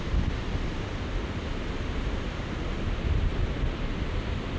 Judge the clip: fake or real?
real